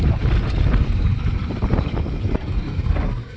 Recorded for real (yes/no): no